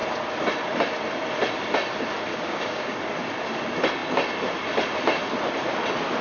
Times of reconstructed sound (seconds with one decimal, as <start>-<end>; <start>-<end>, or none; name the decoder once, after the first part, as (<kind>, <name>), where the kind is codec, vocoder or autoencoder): 2.3-3.0 (codec, DAC)